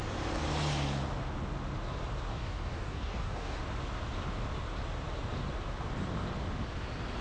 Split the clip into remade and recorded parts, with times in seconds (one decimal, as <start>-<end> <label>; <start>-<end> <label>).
0.0-2.3 recorded; 2.3-3.6 remade; 3.6-7.2 recorded